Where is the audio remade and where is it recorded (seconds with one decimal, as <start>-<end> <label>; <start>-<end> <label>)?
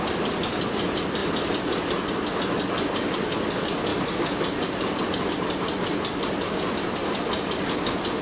0.0-3.9 recorded; 3.9-5.0 remade; 5.0-8.2 recorded